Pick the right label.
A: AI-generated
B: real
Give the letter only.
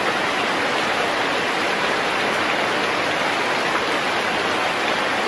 B